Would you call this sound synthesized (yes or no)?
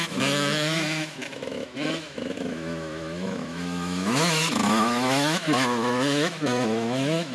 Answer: yes